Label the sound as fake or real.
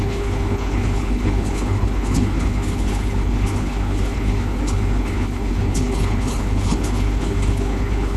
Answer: fake